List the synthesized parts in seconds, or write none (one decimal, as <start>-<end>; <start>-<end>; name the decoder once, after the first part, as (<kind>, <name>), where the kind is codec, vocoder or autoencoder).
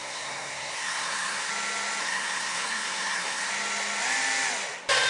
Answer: 0.0-1.5 (codec, SNAC); 2.0-3.5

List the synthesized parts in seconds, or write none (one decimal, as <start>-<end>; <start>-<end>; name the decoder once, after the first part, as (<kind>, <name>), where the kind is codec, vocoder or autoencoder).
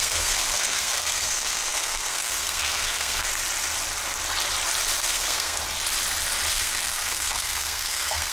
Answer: 0.0-3.3 (codec, SNAC); 5.0-5.6; 6.5-8.3